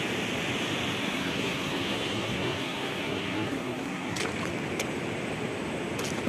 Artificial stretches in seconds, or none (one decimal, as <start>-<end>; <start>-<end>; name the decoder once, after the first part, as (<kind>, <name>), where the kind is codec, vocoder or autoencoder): 1.0-4.2 (codec, SNAC)